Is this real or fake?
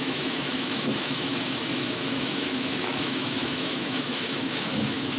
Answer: fake